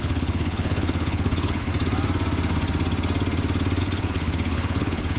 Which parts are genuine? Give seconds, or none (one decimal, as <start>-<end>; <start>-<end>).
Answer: 1.7-3.8